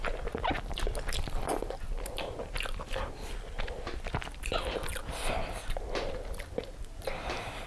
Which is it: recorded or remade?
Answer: recorded